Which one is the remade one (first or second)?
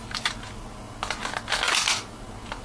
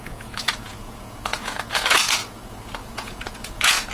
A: second